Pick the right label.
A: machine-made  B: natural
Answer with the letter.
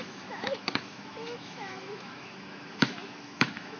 A